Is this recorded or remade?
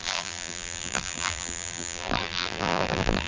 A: remade